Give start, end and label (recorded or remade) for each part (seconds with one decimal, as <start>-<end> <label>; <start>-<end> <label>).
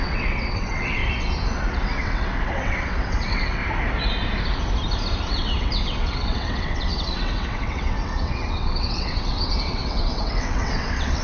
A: 0.0-1.0 remade; 1.0-1.7 recorded; 1.7-3.6 remade; 3.6-5.3 recorded; 5.3-11.2 remade